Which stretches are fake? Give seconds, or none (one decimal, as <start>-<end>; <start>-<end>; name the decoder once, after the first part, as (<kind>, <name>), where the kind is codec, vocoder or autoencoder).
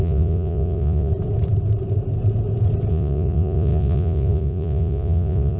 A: 0.0-1.1 (vocoder, Vocos); 2.9-5.6